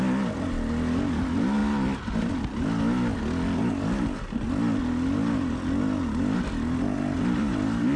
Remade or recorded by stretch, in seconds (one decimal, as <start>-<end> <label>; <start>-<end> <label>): 0.0-8.0 recorded